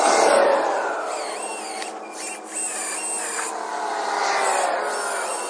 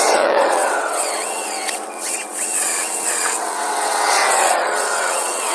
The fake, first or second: second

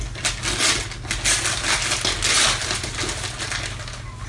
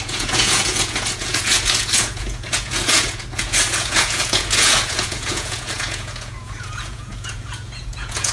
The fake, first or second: second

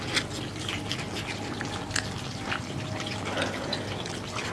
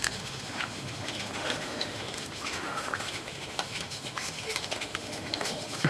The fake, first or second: second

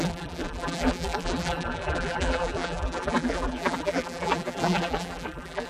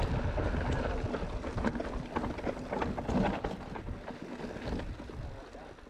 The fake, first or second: first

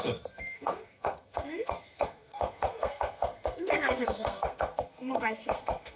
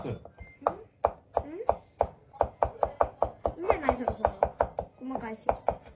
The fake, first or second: first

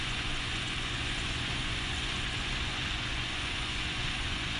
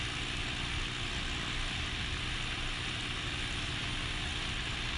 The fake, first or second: first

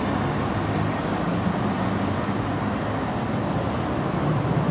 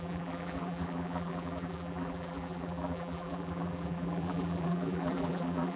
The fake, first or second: second